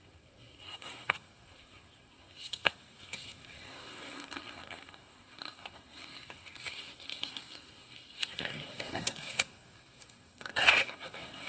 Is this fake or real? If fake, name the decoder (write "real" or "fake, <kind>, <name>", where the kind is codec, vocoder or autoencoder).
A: fake, codec, SNAC